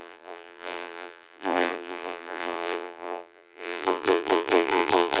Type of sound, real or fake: fake